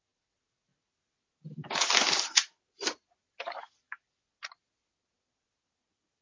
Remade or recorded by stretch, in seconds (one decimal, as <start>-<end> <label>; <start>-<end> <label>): 0.0-6.2 recorded